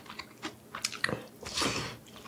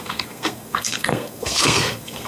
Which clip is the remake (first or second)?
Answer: second